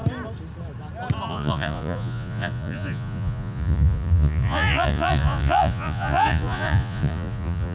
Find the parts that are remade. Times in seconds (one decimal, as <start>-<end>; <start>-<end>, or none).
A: 1.3-7.7